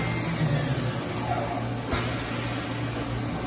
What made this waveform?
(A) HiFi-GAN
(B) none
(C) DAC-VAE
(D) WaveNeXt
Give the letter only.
B